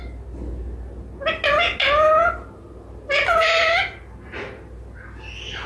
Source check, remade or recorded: recorded